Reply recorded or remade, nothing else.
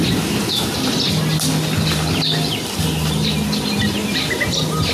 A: recorded